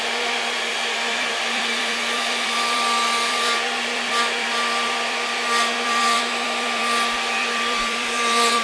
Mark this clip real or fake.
fake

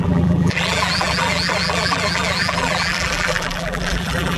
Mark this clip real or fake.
fake